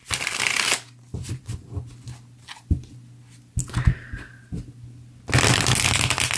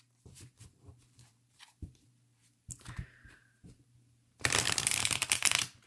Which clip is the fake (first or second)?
second